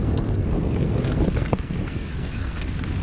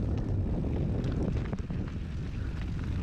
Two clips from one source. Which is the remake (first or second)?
first